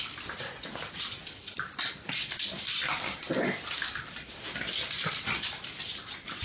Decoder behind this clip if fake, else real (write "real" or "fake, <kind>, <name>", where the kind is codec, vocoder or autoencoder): fake, vocoder, BigVGAN v2